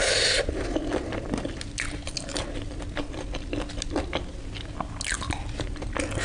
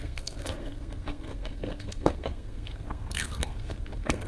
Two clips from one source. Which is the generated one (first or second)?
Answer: second